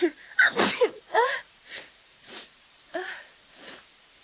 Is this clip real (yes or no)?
no